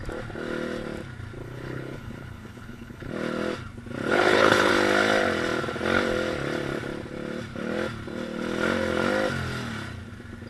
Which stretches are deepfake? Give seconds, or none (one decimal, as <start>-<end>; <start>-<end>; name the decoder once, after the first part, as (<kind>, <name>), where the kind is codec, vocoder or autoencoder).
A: 1.4-3.1 (codec, HILCodec); 4.0-4.7